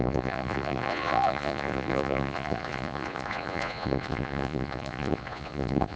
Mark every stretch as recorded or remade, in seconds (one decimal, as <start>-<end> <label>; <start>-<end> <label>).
0.0-6.0 remade